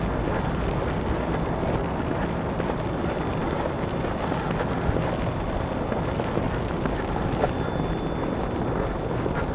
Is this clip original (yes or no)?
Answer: yes